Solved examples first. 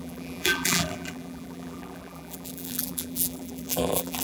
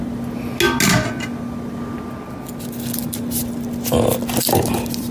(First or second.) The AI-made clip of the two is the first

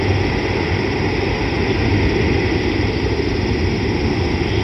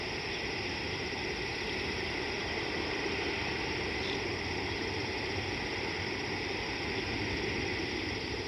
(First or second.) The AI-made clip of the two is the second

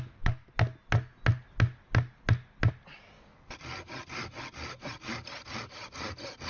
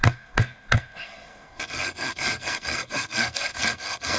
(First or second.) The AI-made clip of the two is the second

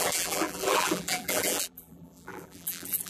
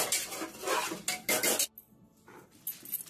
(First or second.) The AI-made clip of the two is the first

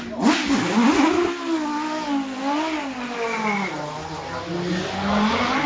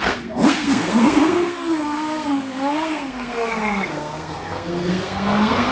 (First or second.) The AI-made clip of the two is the second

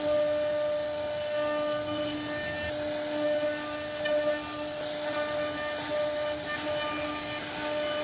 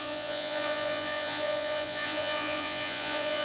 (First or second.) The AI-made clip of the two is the second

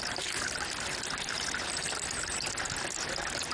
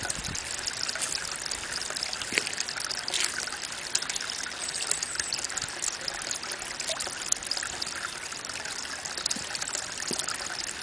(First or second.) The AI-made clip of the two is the first